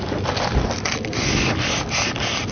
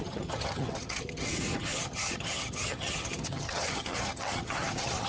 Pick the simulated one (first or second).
second